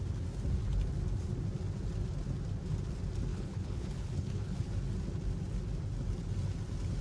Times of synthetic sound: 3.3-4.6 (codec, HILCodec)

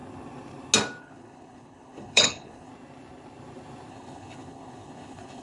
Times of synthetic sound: 1.0-2.7 (codec, HILCodec); 3.9-5.4

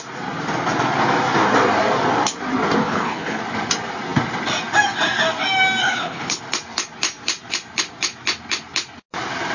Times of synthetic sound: 2.8-3.4 (codec, HILCodec); 5.8-6.4

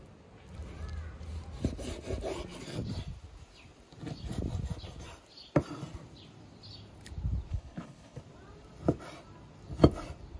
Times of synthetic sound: 7.5-8.2 (codec, HILCodec)